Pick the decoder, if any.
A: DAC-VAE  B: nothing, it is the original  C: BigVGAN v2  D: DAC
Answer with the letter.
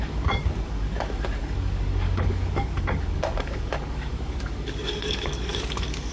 D